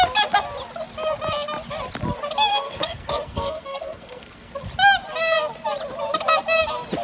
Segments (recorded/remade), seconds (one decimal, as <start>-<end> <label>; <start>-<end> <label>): 0.0-2.5 recorded; 2.5-4.5 remade; 4.5-7.0 recorded

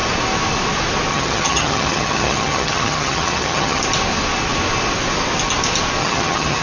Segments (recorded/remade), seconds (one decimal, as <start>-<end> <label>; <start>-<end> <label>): 0.0-1.1 recorded; 1.1-3.8 remade; 3.8-6.0 recorded; 6.0-6.6 remade

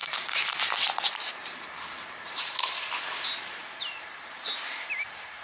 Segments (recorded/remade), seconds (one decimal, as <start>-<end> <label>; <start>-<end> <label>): 0.0-5.4 remade